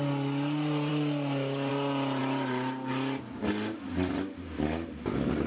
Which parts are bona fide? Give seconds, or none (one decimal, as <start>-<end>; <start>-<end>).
0.0-5.5